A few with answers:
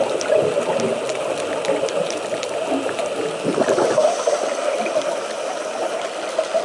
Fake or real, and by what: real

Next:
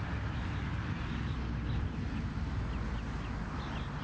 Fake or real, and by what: real